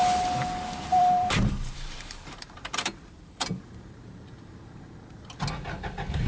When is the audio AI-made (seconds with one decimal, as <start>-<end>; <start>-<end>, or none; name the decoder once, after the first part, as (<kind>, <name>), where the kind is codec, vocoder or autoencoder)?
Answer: 0.9-4.7 (vocoder, BigVGAN v2)